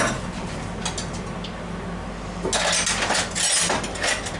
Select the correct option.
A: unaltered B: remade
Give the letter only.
A